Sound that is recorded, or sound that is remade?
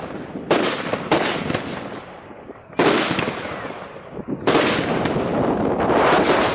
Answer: recorded